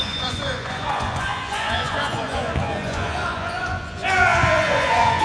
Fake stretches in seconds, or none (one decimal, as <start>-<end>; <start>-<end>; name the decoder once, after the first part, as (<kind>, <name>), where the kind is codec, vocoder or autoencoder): 0.0-5.2 (vocoder, Vocos)